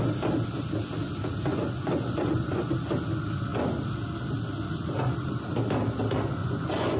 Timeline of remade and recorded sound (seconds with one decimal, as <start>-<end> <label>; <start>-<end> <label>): 0.0-1.5 recorded; 1.5-2.7 remade; 2.7-6.4 recorded; 6.4-7.0 remade